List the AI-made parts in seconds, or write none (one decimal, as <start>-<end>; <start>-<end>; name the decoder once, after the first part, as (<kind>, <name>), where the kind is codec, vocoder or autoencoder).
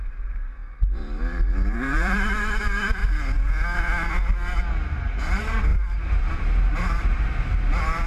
0.0-3.0 (vocoder, BigVGAN v2); 4.7-8.1